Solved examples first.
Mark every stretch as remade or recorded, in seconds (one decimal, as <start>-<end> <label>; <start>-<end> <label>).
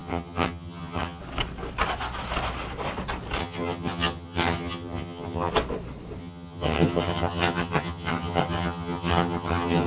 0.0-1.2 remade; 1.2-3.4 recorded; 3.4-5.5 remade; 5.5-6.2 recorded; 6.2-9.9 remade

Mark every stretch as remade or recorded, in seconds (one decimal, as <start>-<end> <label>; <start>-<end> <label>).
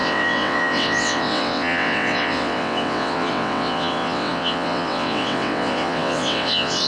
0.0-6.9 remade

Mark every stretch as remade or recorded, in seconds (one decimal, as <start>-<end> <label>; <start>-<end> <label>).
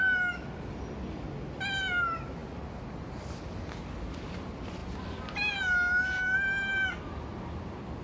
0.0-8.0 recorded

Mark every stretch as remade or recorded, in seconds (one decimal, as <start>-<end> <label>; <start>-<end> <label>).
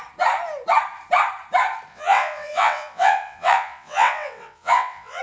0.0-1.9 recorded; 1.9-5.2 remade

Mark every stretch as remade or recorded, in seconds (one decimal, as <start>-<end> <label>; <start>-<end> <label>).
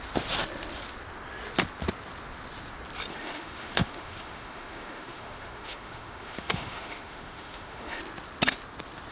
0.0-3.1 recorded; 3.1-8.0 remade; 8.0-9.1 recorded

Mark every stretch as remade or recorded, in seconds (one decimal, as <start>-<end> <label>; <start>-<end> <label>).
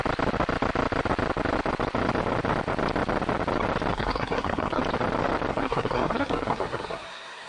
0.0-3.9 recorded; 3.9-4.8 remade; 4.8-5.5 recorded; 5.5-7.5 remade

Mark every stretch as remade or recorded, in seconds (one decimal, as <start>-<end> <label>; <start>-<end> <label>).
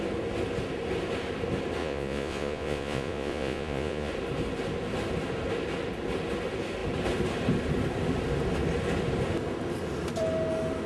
0.0-1.8 recorded; 1.8-4.1 remade; 4.1-10.9 recorded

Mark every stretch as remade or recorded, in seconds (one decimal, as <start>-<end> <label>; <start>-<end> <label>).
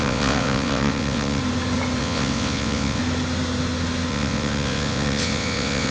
0.0-1.4 remade; 1.4-2.0 recorded; 2.0-3.0 remade; 3.0-4.1 recorded; 4.1-5.9 remade